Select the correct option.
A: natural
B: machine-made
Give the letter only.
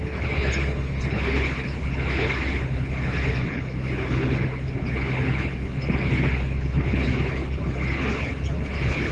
B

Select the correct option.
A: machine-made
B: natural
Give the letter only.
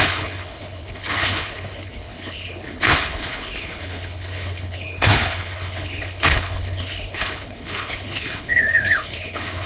A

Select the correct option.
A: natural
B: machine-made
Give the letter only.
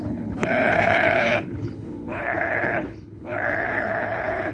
B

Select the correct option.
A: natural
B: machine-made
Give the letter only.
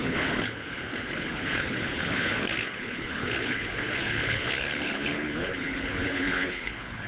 B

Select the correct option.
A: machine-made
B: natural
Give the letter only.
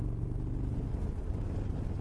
B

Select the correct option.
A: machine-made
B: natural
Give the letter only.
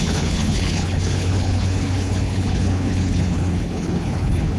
A